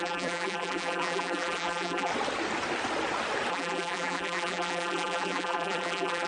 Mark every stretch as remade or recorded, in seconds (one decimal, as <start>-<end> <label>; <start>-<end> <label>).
0.0-2.1 remade; 2.1-3.5 recorded; 3.5-6.3 remade

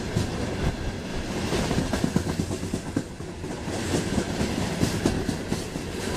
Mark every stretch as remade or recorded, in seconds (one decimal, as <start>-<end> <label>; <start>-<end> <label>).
0.0-1.1 recorded; 1.1-1.6 remade; 1.6-6.2 recorded